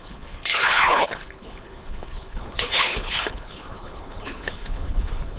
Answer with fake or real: fake